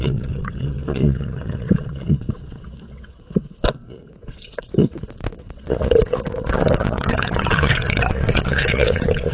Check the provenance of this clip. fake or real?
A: fake